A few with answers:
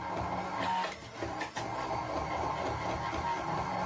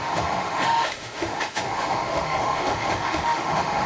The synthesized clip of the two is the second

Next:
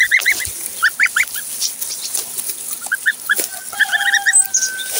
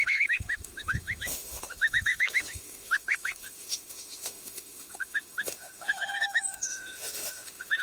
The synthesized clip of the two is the second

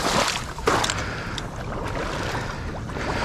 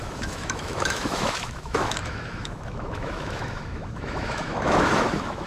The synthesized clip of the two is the second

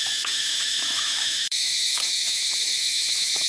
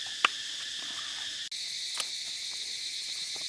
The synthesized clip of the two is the first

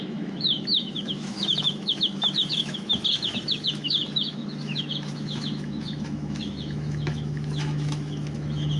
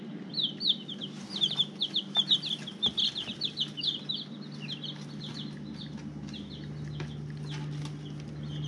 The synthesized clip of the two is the first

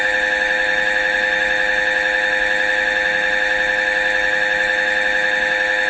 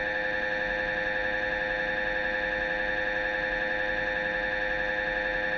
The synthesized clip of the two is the first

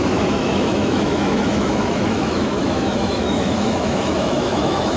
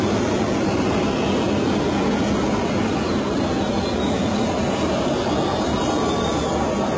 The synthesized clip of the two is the first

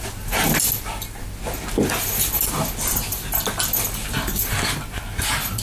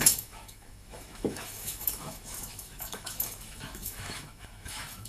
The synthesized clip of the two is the second